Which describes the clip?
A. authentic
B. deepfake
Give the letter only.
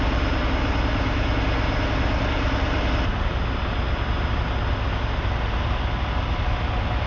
A